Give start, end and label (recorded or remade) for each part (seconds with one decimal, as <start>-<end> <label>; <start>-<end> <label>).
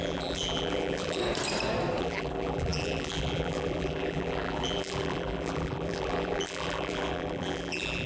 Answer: 0.0-1.2 remade; 1.2-2.0 recorded; 2.0-8.1 remade